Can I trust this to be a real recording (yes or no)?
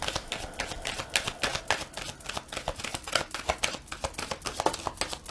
yes